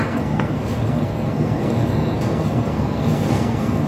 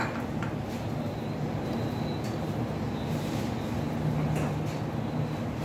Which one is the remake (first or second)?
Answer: first